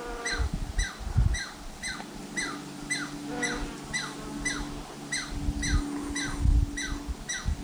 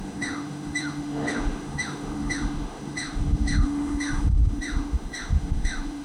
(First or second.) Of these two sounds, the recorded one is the first